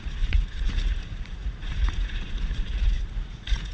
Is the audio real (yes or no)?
no